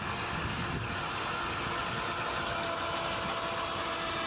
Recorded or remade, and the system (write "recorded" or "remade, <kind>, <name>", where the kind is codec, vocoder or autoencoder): recorded